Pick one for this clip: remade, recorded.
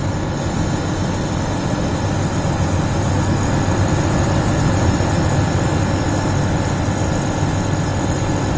recorded